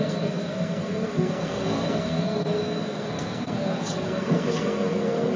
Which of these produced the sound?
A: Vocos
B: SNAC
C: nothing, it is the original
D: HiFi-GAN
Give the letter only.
B